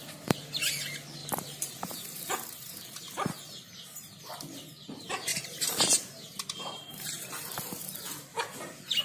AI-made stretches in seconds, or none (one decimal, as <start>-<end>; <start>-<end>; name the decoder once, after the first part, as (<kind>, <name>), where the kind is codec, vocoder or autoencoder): 1.2-4.2 (vocoder, BigVGAN v2); 5.3-7.8; 8.3-9.0